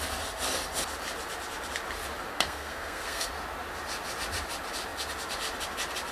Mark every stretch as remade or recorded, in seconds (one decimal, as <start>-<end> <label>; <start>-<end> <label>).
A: 0.0-2.3 recorded; 2.3-3.3 remade; 3.3-6.1 recorded